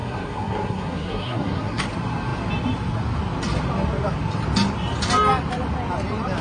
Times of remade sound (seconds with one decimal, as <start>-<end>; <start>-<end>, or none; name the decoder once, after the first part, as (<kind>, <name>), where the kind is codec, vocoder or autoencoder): 0.0-1.8 (codec, SNAC)